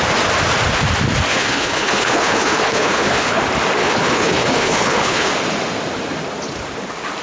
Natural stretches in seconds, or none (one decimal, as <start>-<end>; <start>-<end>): 0.0-1.3; 3.4-3.8; 5.3-7.2